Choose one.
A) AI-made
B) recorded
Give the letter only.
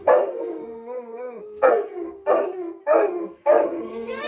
A